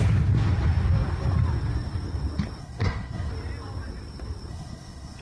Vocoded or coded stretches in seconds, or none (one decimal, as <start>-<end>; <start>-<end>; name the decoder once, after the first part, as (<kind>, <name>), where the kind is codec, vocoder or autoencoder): 2.6-3.3 (codec, SNAC); 4.5-5.2